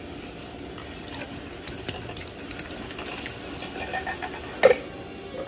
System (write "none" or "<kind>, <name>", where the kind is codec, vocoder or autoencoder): none